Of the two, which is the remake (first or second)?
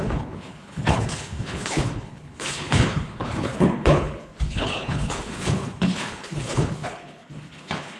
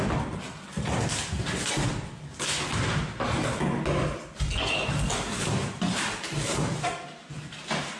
first